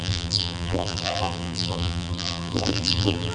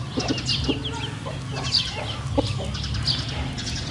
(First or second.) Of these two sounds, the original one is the second